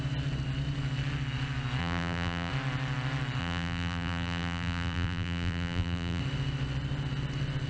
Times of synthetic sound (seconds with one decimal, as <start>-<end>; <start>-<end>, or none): 1.8-2.5; 3.4-6.2